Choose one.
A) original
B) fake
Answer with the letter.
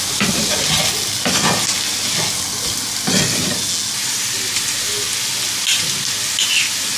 A